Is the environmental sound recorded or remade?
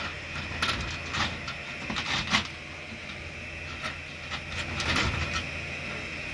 recorded